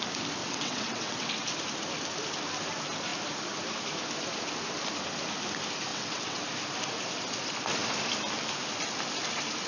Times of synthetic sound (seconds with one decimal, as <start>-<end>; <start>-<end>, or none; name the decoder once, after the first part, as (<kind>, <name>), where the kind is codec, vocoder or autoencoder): 0.4-1.3 (vocoder, WaveNeXt); 5.9-6.4